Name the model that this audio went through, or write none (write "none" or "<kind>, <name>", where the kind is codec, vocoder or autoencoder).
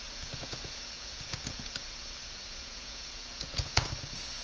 vocoder, Vocos